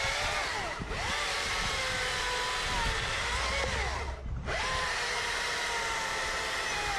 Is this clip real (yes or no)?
yes